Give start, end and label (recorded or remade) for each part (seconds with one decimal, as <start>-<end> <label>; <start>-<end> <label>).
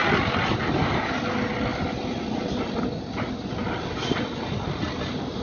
0.0-5.4 recorded